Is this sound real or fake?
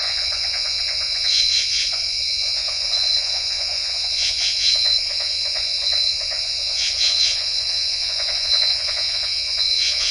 fake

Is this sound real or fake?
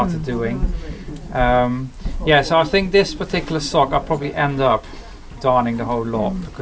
real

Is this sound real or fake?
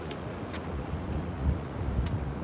fake